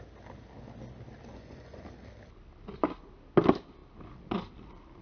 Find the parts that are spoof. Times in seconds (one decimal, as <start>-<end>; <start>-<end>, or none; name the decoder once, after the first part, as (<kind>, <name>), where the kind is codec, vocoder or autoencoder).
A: 1.3-1.8 (vocoder, Vocos)

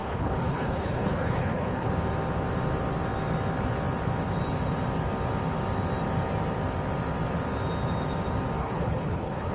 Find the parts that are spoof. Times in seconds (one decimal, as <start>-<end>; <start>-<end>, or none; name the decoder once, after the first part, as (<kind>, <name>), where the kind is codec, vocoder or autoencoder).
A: 0.0-1.9 (codec, HILCodec); 8.6-9.5

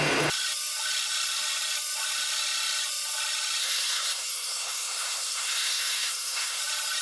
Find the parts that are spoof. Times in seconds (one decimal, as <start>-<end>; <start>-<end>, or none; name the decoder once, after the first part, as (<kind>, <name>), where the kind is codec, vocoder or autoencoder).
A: 3.6-6.6 (codec, SNAC)

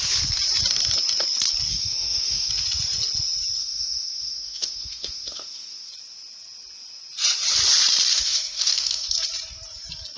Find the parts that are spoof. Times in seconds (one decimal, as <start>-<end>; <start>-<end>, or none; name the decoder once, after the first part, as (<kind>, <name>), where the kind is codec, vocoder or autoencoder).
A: 1.7-2.5 (autoencoder, DAC-VAE); 3.6-5.9; 8.1-9.1

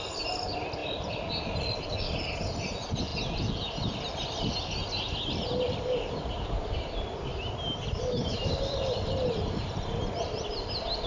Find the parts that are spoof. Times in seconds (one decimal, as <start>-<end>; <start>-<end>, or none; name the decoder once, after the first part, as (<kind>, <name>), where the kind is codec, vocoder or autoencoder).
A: none

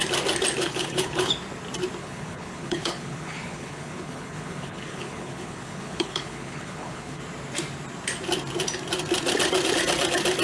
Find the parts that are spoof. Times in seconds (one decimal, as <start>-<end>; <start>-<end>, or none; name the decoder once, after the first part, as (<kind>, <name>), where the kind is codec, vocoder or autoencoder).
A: 0.6-1.3 (codec, HILCodec); 2.0-7.2

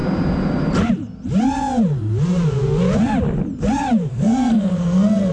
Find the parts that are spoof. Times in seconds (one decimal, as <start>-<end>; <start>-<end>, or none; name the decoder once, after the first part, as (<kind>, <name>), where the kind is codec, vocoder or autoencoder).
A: 4.1-5.3 (codec, SNAC)

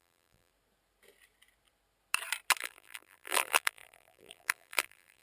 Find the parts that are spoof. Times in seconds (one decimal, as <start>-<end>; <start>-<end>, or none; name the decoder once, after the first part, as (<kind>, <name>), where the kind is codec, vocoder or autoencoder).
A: 0.0-0.5 (vocoder, BigVGAN v2); 2.6-5.2